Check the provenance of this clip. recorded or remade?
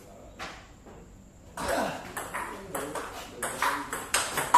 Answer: recorded